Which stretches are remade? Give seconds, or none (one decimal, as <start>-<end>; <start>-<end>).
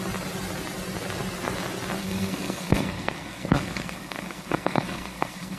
2.0-5.6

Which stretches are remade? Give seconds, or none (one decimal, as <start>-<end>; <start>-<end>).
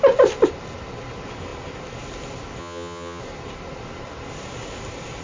2.6-3.2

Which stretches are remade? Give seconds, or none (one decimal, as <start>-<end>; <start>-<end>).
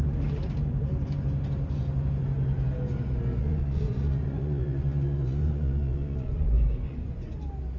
3.4-7.3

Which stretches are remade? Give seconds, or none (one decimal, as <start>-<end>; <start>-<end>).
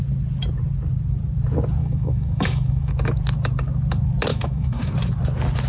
1.8-2.9; 4.3-4.9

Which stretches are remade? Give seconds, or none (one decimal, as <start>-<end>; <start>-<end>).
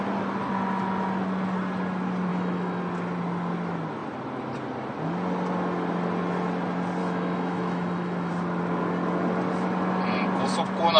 2.3-2.8; 7.0-8.3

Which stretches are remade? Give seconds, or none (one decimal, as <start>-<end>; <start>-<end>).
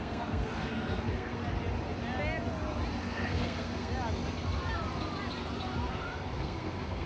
0.0-1.4; 3.0-3.9; 5.9-7.1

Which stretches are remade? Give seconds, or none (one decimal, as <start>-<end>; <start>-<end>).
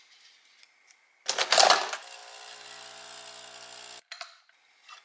none